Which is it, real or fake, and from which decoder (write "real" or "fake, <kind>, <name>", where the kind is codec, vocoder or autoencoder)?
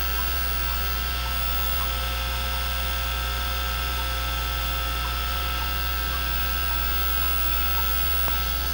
real